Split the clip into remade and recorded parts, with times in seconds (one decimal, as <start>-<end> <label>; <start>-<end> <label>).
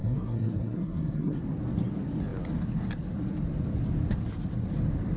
0.0-1.4 remade; 1.4-5.2 recorded